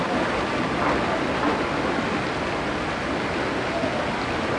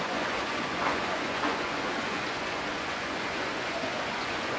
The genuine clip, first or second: first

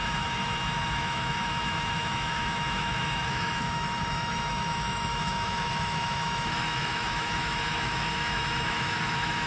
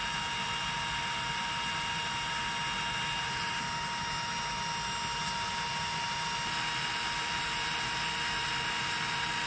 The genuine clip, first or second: second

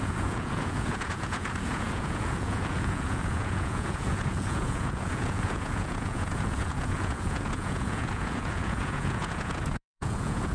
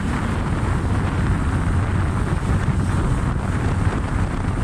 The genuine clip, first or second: second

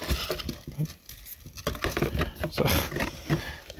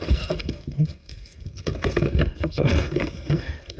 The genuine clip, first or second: first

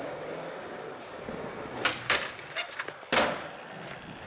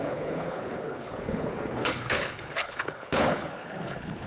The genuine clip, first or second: first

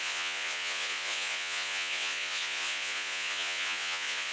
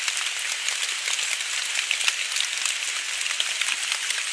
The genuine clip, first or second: second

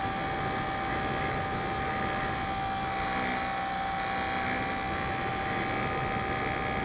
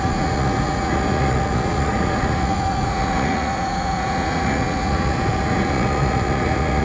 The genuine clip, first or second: first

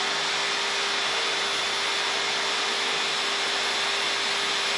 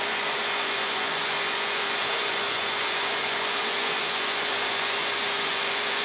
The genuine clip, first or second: first